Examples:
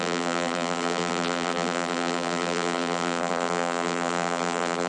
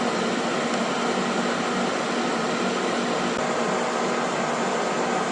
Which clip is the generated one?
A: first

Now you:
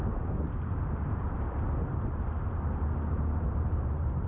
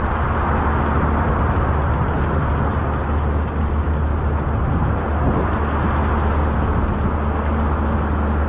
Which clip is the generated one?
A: first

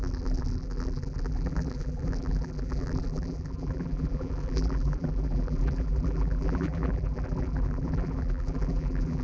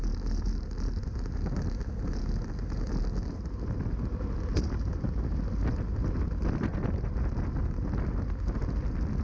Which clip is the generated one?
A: first